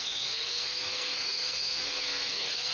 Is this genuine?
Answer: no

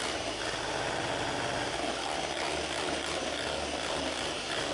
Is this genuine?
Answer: yes